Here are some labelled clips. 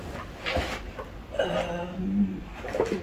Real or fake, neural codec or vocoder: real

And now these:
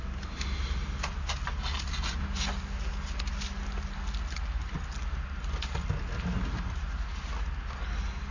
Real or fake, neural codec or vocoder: real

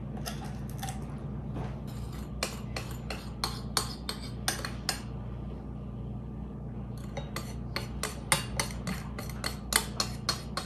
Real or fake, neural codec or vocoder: real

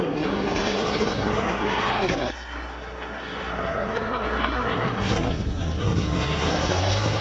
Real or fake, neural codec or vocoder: fake, codec, SNAC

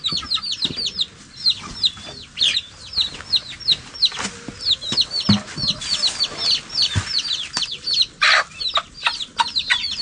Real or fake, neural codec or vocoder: real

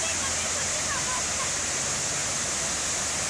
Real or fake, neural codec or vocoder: real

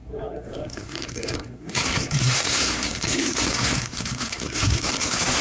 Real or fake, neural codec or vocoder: fake, codec, SNAC